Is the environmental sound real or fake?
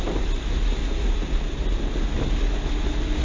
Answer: real